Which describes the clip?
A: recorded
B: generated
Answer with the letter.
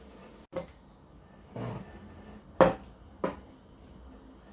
A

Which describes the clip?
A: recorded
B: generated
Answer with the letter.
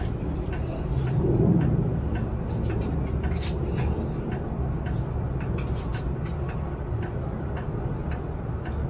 A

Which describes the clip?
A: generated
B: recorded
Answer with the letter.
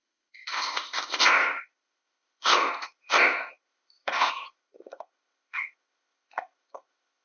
A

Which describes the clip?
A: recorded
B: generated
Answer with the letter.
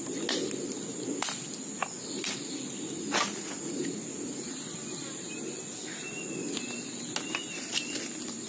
A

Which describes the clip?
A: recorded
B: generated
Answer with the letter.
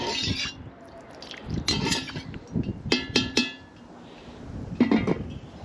A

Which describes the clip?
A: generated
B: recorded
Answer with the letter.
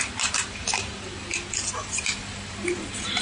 B